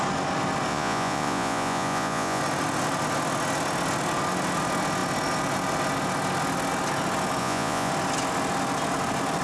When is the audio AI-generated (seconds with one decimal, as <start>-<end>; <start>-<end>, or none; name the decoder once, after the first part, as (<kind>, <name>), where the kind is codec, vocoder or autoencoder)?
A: 0.7-2.4 (vocoder, Vocos); 7.4-7.9